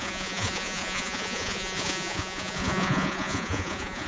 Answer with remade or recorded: remade